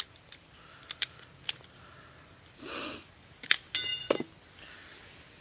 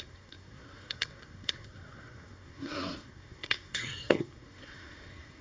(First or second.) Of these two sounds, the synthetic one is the second